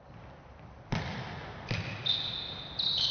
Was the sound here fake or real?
real